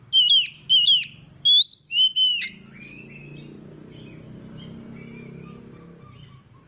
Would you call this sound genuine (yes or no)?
yes